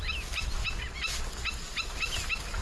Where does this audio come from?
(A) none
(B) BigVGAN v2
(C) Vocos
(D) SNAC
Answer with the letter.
A